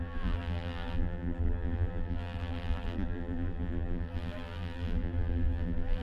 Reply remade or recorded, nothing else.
remade